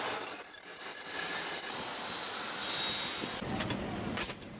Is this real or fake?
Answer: real